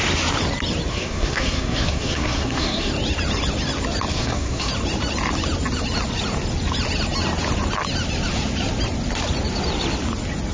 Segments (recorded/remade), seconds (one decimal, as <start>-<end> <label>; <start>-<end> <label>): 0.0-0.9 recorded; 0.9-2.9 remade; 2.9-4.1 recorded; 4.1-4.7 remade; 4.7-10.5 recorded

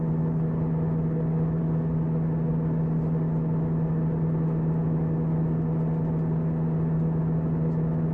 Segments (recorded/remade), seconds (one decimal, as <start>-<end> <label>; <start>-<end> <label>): 0.0-8.1 recorded

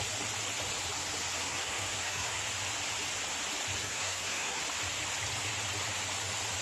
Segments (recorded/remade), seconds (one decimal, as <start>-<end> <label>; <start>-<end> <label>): 0.0-1.4 recorded; 1.4-2.4 remade; 2.4-3.8 recorded; 3.8-4.6 remade; 4.6-6.6 recorded

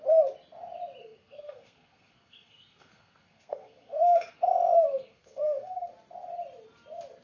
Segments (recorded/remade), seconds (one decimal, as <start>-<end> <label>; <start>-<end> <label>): 0.0-1.0 recorded; 1.0-4.3 remade; 4.3-4.9 recorded; 4.9-5.9 remade; 5.9-7.2 recorded

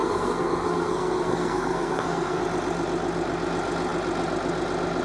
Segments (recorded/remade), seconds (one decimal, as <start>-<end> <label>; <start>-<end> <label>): 0.0-2.4 remade; 2.4-5.0 recorded

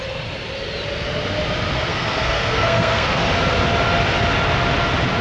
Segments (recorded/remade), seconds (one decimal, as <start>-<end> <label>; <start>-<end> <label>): 0.0-1.9 recorded; 1.9-3.2 remade; 3.2-5.2 recorded

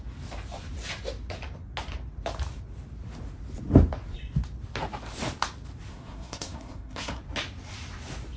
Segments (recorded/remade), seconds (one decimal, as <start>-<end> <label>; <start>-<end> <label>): 0.0-5.9 recorded; 5.9-7.2 remade; 7.2-8.4 recorded